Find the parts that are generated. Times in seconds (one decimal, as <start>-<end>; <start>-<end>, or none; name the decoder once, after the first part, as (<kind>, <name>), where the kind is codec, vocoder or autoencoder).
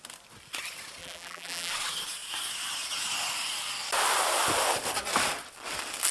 1.0-1.7 (vocoder, BigVGAN v2)